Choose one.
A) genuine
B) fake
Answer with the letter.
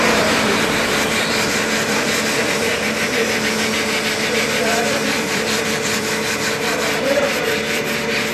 B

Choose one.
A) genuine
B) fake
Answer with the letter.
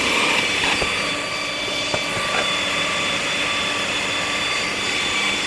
A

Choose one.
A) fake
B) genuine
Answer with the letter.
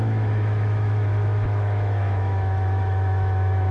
A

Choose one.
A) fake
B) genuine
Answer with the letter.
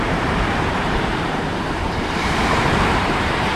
A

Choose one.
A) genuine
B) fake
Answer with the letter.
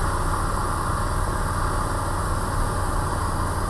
A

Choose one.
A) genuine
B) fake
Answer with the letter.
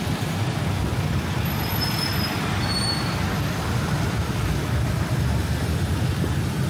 A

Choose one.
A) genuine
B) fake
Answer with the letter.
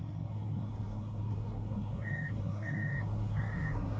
B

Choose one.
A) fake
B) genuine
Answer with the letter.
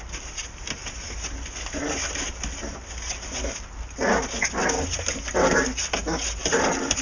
B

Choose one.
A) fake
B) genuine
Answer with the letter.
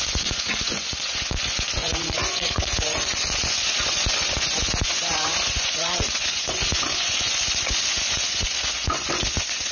A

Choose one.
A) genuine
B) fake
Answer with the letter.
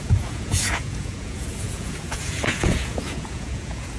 B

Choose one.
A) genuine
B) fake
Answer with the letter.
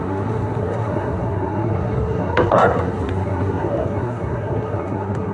B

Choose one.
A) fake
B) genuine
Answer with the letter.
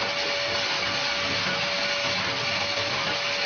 B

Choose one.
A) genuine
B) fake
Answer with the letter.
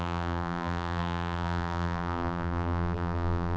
B